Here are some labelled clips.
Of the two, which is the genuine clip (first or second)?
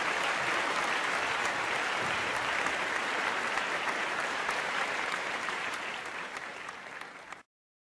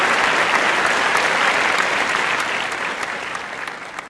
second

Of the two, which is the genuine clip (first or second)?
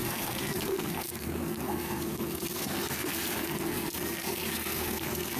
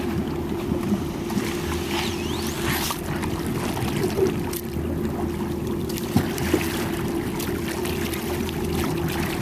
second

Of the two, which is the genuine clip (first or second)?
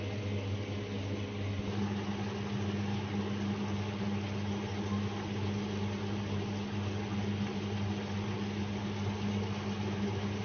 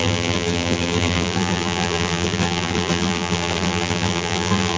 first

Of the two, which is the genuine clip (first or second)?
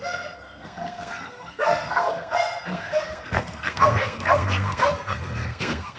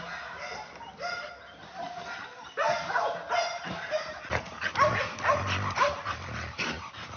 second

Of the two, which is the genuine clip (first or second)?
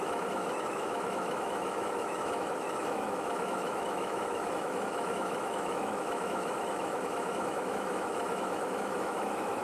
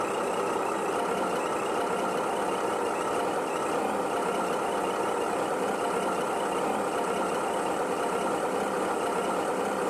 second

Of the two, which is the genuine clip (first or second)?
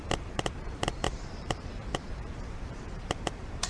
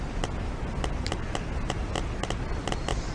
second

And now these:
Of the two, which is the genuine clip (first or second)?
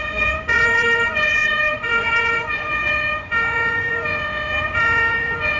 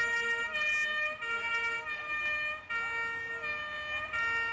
second